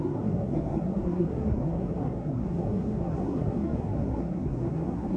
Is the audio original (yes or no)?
no